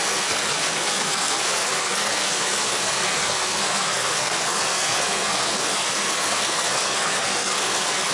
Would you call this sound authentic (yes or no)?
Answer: no